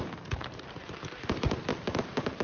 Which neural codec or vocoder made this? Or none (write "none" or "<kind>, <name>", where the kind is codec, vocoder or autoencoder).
vocoder, BigVGAN v2